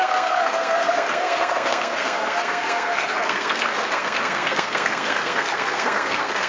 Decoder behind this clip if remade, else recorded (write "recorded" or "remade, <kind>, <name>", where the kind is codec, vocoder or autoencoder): remade, codec, SNAC